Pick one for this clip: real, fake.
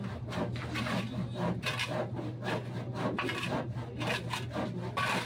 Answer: real